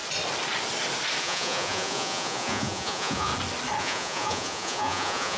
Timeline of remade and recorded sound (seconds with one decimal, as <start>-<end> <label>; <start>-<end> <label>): 0.0-1.2 recorded; 1.2-3.3 remade; 3.3-3.8 recorded; 3.8-5.4 remade